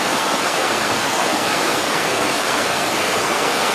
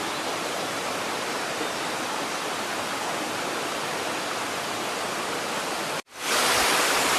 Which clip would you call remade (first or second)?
first